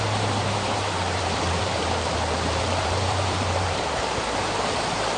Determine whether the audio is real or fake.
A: fake